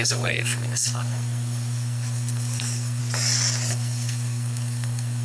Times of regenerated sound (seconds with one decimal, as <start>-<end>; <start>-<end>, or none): 0.0-3.0; 3.7-5.2